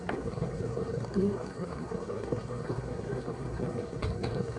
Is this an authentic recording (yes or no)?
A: no